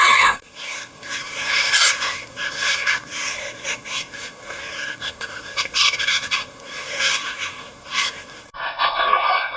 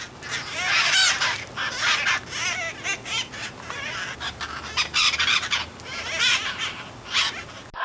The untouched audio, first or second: second